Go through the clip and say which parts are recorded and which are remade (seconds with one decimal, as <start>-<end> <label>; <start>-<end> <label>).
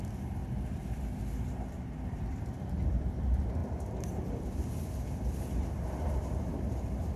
0.0-3.6 remade; 3.6-4.3 recorded; 4.3-7.2 remade